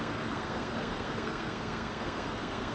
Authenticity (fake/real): fake